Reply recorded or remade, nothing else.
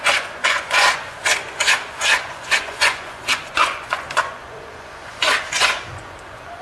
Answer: remade